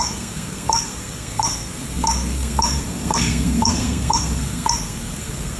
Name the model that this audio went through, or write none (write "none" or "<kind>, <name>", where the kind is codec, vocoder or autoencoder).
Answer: codec, SNAC